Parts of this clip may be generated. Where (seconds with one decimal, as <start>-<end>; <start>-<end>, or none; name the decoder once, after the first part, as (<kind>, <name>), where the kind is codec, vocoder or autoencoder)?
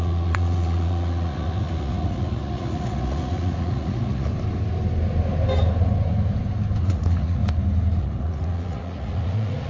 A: 0.0-4.3 (vocoder, Vocos); 6.8-7.4; 8.0-9.7